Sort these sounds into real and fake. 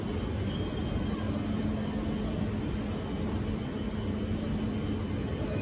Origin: real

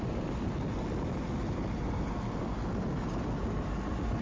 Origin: real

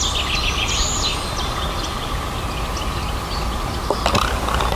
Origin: real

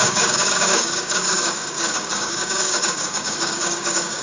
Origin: fake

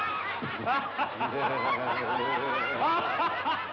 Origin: real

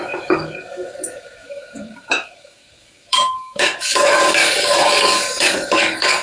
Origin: fake